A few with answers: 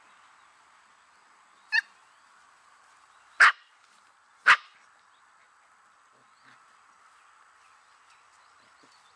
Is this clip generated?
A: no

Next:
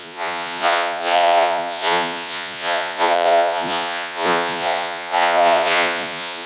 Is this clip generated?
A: yes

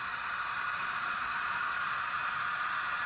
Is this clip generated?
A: yes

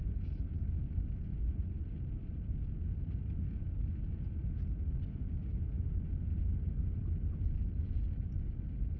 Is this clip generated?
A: no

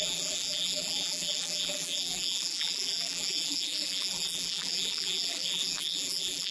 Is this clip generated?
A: yes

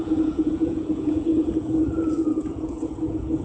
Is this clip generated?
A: yes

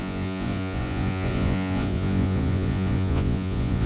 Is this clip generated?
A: yes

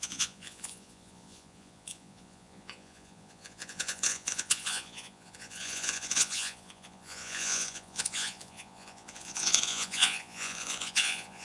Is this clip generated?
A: yes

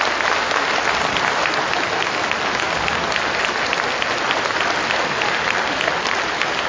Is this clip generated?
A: no